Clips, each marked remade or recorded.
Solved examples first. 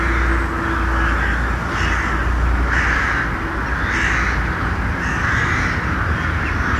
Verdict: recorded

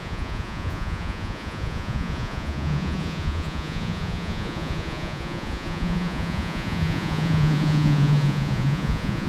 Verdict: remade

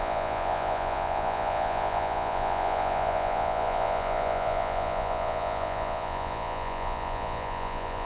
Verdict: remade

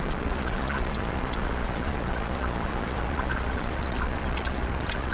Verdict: remade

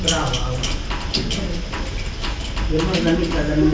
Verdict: recorded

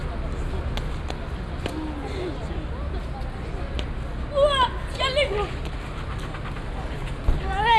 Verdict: recorded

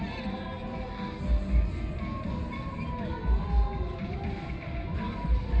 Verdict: recorded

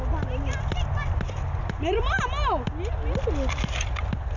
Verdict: recorded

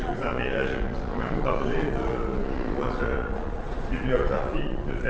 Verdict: remade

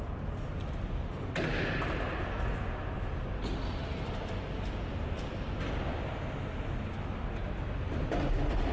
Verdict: recorded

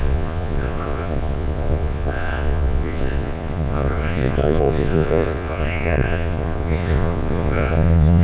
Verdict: remade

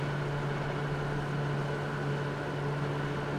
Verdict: recorded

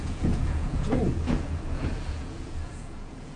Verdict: remade